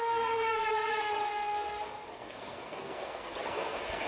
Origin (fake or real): fake